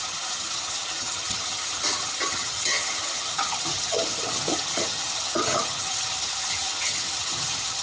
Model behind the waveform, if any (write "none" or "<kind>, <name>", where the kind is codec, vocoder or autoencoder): vocoder, HiFi-GAN